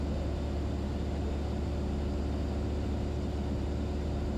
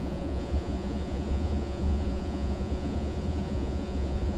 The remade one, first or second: second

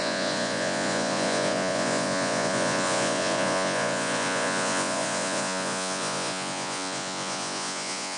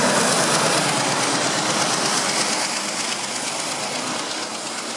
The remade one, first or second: first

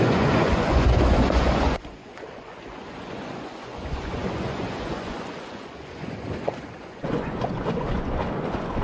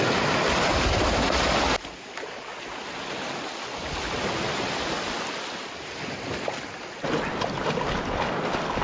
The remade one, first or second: first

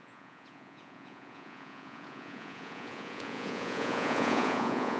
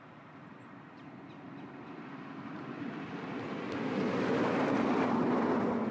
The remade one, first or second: first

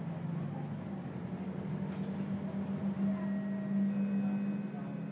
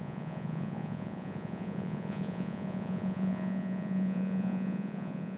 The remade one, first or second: second